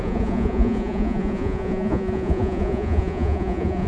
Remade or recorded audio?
remade